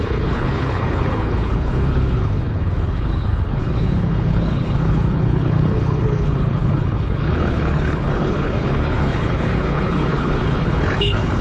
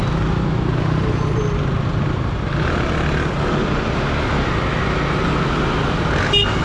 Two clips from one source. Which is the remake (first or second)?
first